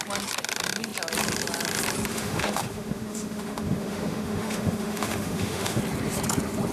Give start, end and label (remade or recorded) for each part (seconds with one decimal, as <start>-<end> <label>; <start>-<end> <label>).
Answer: 0.0-2.1 recorded; 2.1-5.8 remade; 5.8-6.7 recorded